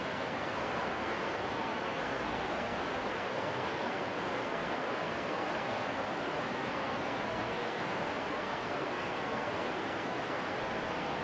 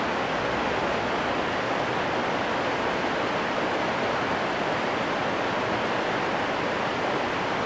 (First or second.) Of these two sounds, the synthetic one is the first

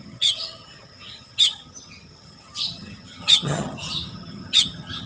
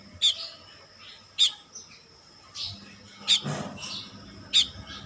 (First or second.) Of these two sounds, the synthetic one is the first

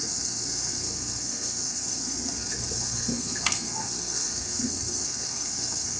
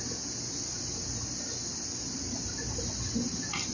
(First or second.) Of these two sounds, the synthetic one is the first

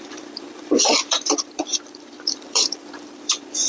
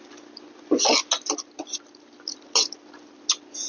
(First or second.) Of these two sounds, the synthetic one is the first